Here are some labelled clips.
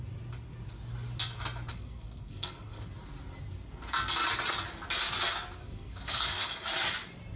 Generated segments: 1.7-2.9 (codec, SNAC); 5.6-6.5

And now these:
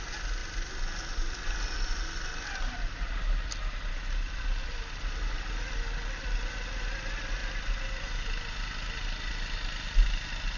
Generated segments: none

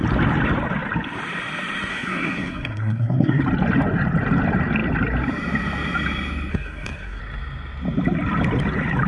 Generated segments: 1.9-3.4 (codec, SNAC); 6.5-7.2

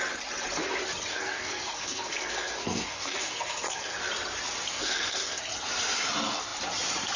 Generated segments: 1.1-4.0 (codec, SNAC); 4.7-5.4

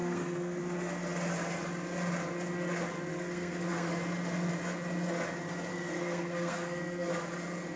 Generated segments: 0.0-0.6 (codec, SNAC); 3.1-3.9; 5.7-7.1

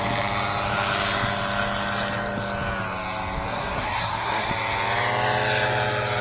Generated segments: 3.5-4.5 (codec, SNAC)

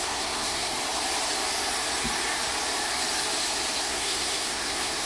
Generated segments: 0.0-0.7 (codec, SNAC); 3.8-5.1